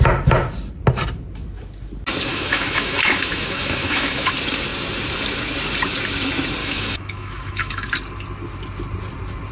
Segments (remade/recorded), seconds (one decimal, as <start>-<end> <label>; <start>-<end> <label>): 0.0-2.3 recorded; 2.3-4.3 remade; 4.3-6.6 recorded; 6.6-7.9 remade; 7.9-9.5 recorded